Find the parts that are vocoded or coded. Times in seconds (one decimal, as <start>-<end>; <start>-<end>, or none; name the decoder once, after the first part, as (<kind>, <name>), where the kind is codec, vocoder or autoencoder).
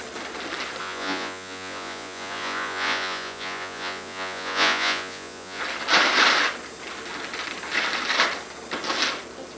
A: 0.8-5.6 (vocoder, Vocos)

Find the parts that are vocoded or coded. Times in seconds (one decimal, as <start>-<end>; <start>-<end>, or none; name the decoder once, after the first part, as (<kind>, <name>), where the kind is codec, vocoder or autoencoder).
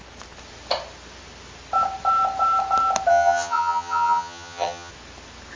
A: 3.1-4.9 (vocoder, HiFi-GAN)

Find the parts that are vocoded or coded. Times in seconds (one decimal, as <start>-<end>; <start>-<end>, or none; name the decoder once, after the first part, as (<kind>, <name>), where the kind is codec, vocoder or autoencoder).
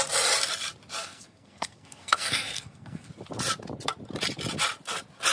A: 1.0-3.1 (codec, SNAC)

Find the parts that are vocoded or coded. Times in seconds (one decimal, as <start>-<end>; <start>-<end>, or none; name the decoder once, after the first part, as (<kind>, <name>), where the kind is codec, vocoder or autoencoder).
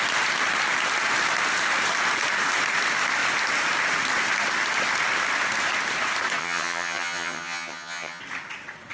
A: 6.4-8.2 (vocoder, HiFi-GAN)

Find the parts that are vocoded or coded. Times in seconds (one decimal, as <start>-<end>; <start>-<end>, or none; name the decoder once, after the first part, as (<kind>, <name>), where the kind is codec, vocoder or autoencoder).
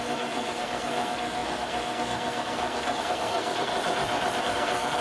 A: 0.0-3.7 (codec, SNAC); 4.4-5.0